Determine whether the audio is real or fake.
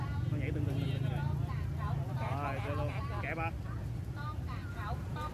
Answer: real